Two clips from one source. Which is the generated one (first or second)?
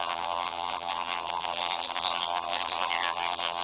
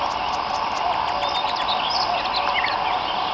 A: first